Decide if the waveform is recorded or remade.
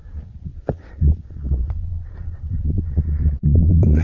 remade